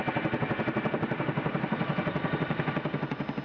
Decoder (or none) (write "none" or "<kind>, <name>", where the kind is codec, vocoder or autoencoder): none